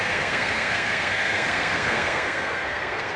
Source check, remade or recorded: remade